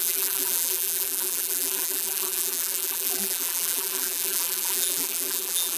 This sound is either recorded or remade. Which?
remade